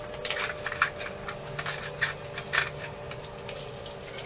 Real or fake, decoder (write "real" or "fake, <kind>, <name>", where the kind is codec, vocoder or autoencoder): real